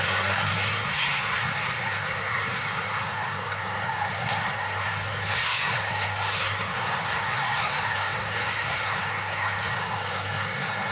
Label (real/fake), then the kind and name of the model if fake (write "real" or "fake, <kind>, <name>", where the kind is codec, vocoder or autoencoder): fake, codec, SNAC